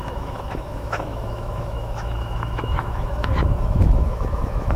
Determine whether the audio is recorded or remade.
remade